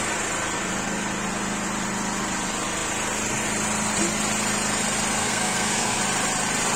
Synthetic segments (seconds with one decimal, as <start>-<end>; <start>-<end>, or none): 5.2-6.0